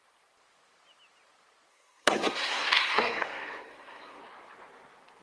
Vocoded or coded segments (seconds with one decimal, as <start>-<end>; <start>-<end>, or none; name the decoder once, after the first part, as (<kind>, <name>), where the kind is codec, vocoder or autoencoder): 1.7-4.2 (codec, SNAC)